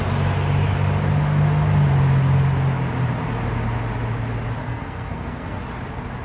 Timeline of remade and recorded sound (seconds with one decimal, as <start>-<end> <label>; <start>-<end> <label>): 0.0-4.6 recorded; 4.6-5.6 remade; 5.6-6.2 recorded